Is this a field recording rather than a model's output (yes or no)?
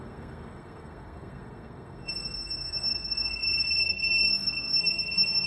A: no